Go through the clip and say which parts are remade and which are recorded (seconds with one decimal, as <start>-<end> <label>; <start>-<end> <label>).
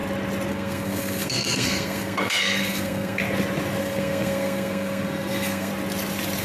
0.0-0.5 recorded; 0.5-3.2 remade; 3.2-3.8 recorded; 3.8-5.7 remade; 5.7-6.4 recorded